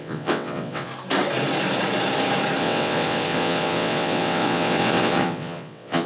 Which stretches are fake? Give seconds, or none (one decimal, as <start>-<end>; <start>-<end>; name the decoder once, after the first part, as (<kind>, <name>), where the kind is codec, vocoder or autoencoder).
0.0-0.9 (vocoder, WaveNeXt); 2.6-6.1